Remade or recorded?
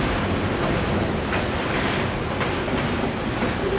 recorded